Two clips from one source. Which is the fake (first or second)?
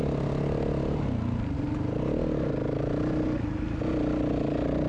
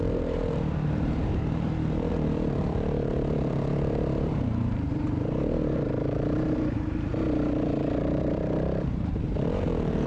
second